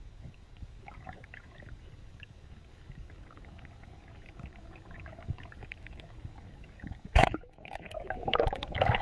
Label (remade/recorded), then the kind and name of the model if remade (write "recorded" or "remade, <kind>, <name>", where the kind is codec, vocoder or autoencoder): remade, codec, DAC